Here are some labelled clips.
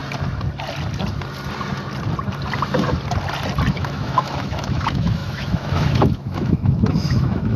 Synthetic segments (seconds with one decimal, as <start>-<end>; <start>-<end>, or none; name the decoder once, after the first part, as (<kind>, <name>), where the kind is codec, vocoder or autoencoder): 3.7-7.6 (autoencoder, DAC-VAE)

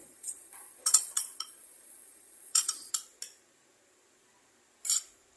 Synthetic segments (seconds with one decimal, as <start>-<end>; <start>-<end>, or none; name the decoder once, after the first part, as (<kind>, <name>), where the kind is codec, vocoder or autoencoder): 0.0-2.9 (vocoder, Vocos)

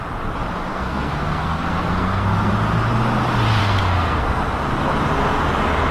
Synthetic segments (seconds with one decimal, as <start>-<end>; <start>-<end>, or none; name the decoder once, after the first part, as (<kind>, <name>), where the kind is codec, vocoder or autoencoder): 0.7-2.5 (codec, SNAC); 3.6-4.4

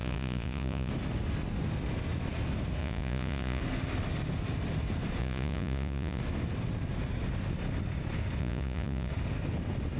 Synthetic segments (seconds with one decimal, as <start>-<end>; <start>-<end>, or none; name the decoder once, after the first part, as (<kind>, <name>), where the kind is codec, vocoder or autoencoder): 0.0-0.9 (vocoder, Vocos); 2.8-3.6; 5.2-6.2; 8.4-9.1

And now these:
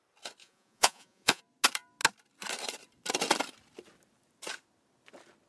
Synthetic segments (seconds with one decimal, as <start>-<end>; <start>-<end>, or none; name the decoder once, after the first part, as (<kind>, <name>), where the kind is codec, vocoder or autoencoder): 0.4-1.4 (vocoder, Vocos)